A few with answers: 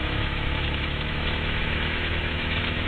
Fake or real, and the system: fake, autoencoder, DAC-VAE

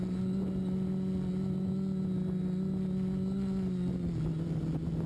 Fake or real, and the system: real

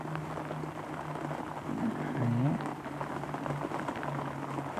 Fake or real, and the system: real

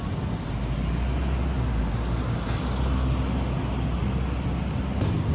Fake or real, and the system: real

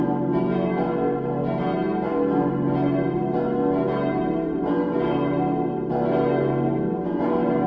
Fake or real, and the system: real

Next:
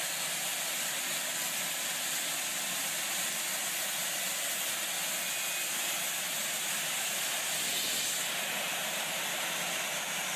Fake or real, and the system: real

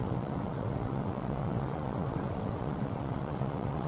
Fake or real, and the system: fake, vocoder, WaveNeXt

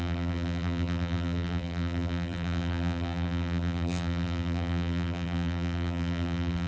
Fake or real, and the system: fake, vocoder, BigVGAN v2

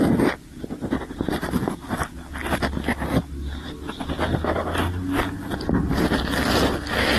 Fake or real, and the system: real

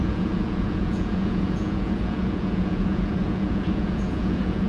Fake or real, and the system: fake, vocoder, Vocos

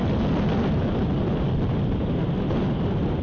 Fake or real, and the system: real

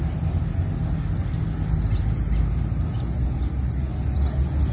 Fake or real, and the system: real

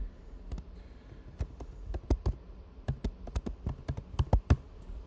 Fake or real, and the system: real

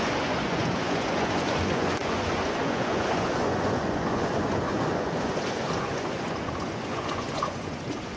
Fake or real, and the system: fake, vocoder, Vocos